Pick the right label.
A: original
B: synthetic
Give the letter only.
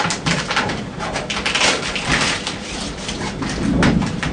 B